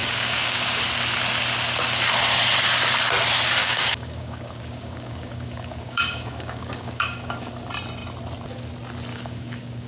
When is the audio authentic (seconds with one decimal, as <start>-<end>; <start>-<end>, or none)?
0.8-3.6; 7.5-9.1